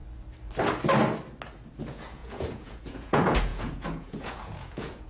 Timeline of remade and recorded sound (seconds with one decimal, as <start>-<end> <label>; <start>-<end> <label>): 0.0-1.8 recorded; 1.8-5.1 remade